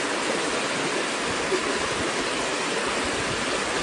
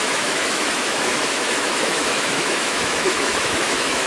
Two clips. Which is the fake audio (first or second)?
second